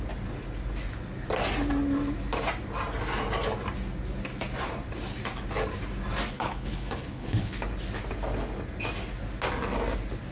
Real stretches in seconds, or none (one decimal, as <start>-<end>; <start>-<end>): 0.0-6.3; 7.7-10.3